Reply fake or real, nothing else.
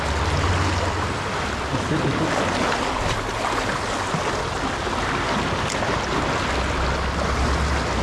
real